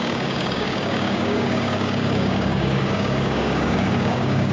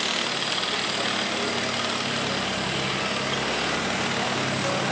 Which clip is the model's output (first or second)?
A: first